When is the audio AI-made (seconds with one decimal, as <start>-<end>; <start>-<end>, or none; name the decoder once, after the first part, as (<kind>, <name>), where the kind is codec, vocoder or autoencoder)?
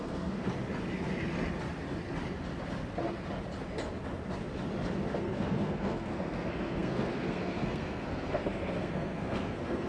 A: 0.0-0.4 (codec, SNAC); 5.2-9.9